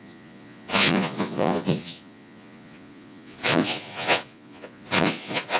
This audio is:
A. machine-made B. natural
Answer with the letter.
A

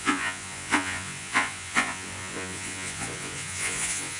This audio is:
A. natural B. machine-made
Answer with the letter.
B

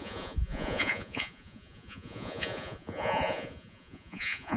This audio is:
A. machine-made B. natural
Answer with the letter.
A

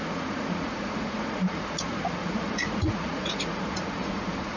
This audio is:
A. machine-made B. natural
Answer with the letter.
A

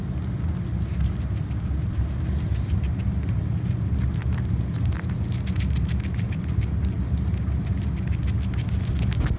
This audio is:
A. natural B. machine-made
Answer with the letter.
A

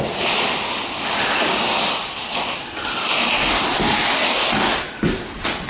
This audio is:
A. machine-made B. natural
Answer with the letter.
B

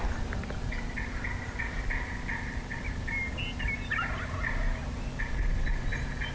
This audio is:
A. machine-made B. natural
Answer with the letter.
B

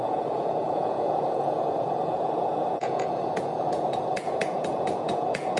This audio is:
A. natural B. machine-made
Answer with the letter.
B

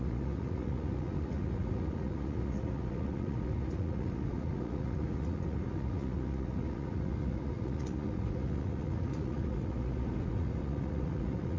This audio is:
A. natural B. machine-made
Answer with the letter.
B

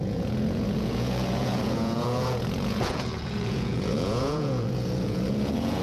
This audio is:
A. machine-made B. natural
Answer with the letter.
A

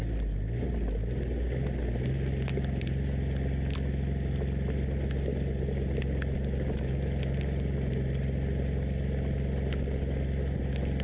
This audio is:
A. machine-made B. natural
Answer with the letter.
B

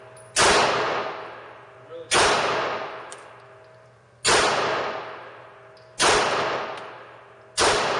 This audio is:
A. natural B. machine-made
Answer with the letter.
A